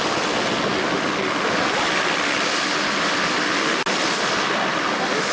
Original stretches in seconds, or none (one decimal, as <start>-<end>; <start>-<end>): 0.0-5.3